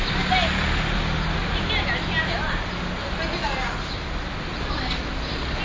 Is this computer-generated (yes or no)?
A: no